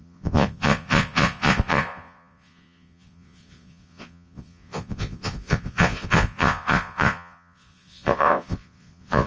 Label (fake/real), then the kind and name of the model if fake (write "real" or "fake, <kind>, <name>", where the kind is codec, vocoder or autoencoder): fake, vocoder, Vocos